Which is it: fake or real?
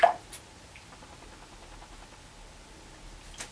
real